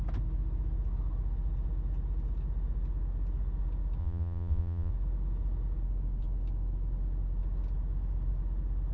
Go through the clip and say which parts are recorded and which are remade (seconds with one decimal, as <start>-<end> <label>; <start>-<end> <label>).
0.0-4.0 recorded; 4.0-4.9 remade; 4.9-8.9 recorded

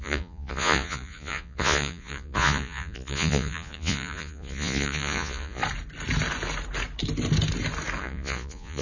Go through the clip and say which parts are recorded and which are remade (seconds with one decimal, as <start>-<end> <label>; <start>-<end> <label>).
0.0-5.6 remade; 5.6-8.0 recorded; 8.0-8.8 remade

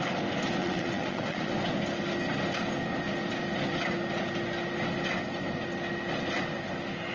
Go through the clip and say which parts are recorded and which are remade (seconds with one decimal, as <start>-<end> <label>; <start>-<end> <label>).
0.0-0.6 recorded; 0.6-1.5 remade; 1.5-7.1 recorded

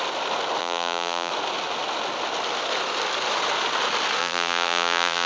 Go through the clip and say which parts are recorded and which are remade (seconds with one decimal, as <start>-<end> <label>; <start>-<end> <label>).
0.0-0.6 recorded; 0.6-1.3 remade; 1.3-4.2 recorded; 4.2-5.3 remade